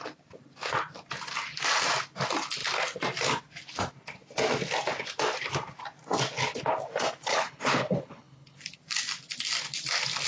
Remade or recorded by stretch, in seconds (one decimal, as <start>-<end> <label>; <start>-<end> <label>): 0.0-7.3 recorded; 7.3-8.6 remade; 8.6-10.3 recorded